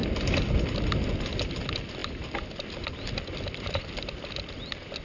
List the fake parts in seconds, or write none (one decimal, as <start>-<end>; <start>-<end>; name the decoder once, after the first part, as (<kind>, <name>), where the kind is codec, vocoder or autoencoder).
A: none